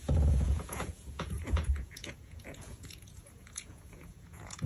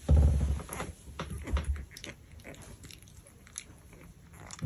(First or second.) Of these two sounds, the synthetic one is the first